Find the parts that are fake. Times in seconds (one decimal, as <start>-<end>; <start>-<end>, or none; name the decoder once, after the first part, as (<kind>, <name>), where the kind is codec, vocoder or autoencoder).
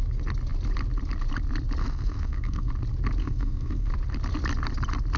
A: 1.8-2.7 (codec, SNAC); 3.2-3.9